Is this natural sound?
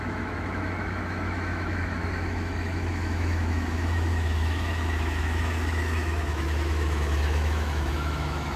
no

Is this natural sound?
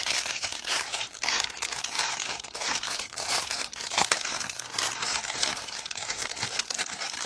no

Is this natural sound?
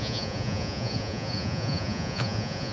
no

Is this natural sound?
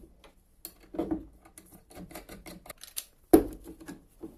yes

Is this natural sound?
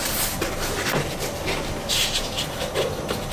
yes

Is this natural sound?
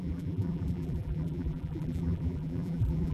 no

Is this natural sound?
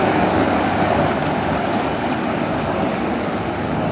no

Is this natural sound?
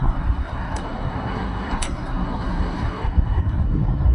no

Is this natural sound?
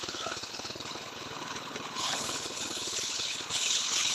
no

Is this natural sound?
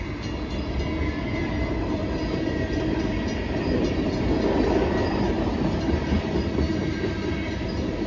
yes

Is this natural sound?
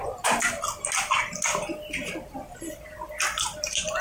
yes